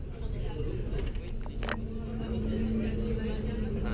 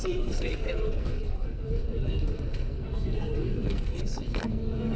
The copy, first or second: second